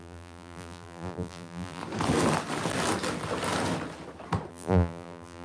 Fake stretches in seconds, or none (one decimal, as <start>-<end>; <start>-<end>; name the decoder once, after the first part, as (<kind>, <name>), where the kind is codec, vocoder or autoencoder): 0.0-1.8 (vocoder, BigVGAN v2); 4.5-5.4